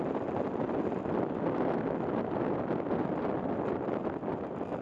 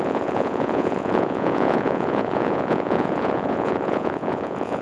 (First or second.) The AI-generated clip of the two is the second